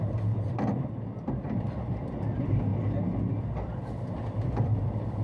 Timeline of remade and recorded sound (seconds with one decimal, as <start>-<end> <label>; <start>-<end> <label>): 0.0-2.7 remade; 2.7-4.1 recorded; 4.1-5.2 remade